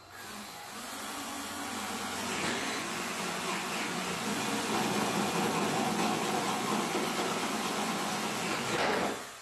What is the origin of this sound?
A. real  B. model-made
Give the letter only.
B